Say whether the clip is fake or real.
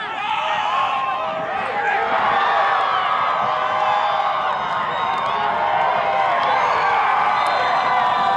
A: real